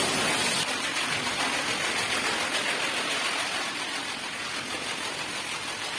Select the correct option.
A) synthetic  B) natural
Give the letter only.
B